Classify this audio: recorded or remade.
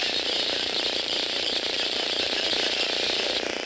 remade